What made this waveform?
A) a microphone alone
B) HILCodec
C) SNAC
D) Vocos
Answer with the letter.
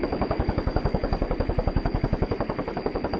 B